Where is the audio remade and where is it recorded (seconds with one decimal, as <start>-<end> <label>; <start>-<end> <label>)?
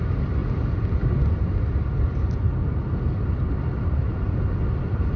0.0-5.2 recorded